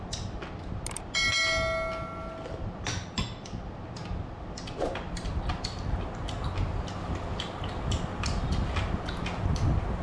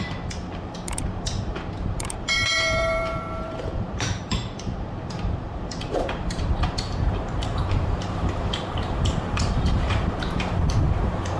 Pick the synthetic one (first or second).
second